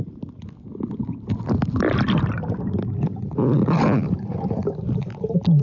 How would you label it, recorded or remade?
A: remade